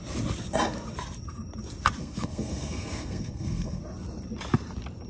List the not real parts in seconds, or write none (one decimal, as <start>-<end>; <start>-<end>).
2.0-3.8